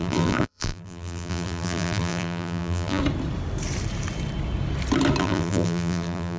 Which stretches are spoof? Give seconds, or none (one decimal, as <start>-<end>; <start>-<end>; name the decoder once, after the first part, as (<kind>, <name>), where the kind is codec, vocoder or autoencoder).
0.0-3.0 (vocoder, BigVGAN v2); 5.2-6.4